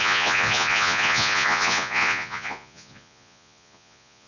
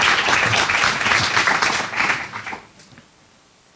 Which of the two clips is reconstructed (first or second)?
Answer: first